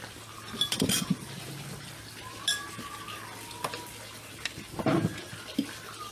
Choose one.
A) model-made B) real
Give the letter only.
B